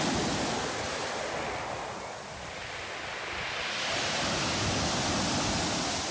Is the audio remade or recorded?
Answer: recorded